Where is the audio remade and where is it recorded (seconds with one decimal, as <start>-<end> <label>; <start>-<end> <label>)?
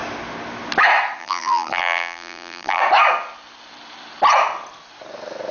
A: 0.0-1.2 recorded; 1.2-2.8 remade; 2.8-5.5 recorded